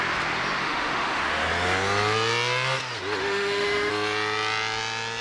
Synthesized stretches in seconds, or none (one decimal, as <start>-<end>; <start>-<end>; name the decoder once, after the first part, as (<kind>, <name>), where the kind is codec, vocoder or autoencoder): 0.6-1.2 (autoencoder, DAC-VAE); 3.2-3.9